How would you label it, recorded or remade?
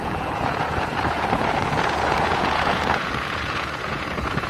remade